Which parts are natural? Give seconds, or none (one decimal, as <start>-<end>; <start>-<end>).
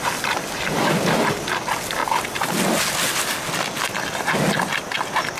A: 0.0-5.4